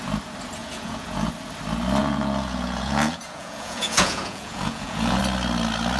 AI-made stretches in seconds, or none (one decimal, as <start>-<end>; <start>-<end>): 0.6-1.3; 2.0-5.2